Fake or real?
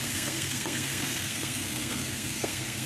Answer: fake